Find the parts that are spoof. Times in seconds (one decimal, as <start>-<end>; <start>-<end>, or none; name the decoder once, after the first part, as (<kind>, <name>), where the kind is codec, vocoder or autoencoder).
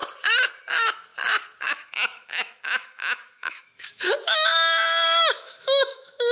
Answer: 0.7-1.1 (autoencoder, DAC-VAE); 1.7-6.3